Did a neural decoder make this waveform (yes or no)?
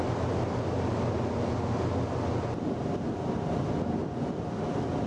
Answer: no